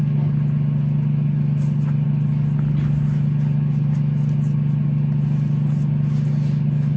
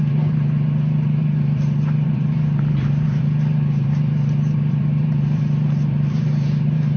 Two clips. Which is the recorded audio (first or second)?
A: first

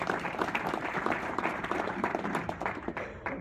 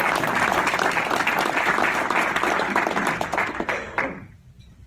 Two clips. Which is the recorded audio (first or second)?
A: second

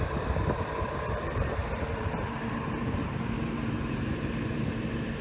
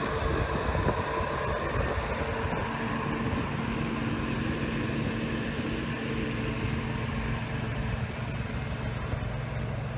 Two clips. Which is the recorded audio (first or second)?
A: second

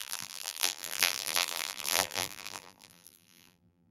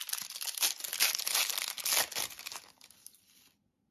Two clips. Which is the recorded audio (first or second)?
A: second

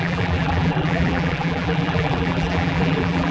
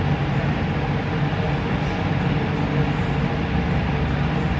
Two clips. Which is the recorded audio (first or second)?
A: second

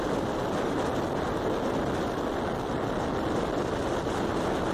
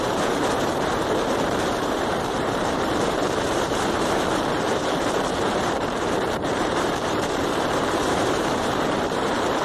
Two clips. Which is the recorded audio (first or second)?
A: first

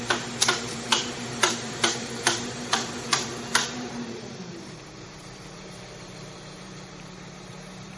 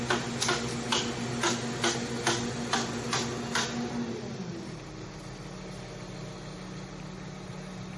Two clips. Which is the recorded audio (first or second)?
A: second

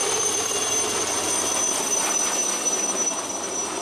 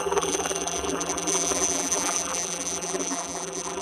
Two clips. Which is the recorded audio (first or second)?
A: first